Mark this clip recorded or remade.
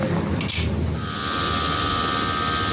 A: recorded